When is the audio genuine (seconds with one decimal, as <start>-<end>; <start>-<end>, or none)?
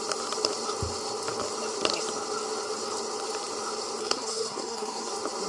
0.0-4.0; 5.1-5.5